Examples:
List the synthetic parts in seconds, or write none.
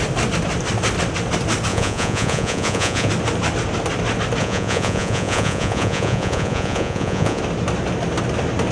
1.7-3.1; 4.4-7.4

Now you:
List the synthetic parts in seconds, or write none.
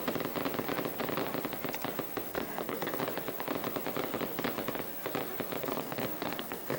2.3-3.0; 5.6-6.8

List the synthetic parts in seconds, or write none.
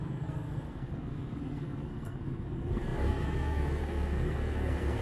0.0-5.0